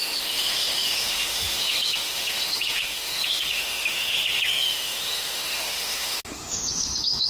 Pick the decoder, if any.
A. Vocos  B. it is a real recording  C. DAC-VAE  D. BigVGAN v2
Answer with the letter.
C